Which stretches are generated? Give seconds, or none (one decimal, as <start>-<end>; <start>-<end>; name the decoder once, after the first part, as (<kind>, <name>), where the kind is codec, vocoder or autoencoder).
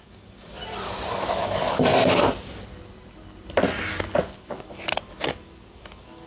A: 0.0-0.6 (codec, DAC); 1.1-1.9; 4.3-6.3